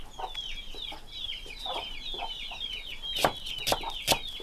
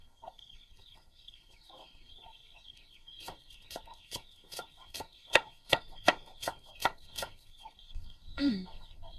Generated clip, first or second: second